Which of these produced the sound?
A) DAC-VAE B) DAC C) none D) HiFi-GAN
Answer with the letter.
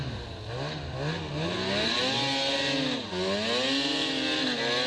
C